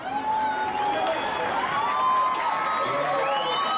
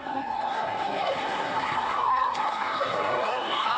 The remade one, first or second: second